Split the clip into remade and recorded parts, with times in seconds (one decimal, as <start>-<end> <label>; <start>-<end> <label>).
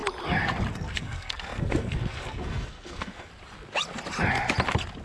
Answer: 0.0-0.7 recorded; 0.7-3.3 remade; 3.3-5.0 recorded